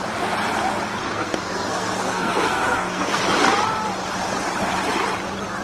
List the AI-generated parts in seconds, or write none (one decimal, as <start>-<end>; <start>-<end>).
1.0-3.2